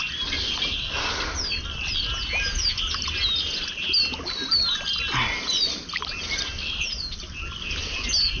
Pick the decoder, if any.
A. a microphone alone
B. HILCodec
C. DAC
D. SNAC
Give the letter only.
A